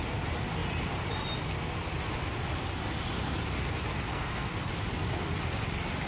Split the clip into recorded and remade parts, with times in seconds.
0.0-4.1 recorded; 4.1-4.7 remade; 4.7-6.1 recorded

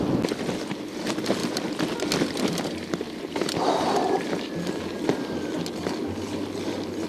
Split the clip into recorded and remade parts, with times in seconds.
0.0-7.1 recorded